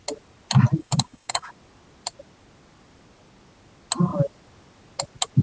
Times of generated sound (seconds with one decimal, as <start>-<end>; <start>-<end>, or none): 0.8-1.5